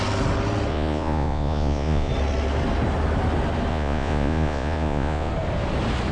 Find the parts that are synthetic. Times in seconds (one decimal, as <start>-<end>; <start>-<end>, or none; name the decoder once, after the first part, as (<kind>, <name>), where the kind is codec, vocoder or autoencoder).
0.7-2.1 (vocoder, Vocos); 3.7-5.3